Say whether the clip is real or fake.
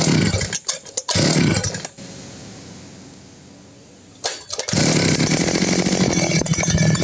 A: real